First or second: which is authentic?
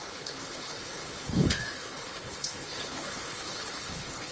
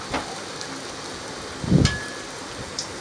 second